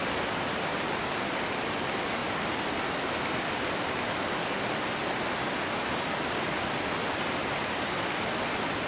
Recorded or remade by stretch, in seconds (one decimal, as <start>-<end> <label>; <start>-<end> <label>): 0.0-8.9 recorded